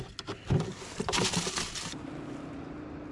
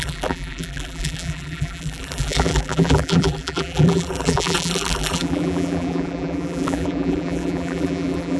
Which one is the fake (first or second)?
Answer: second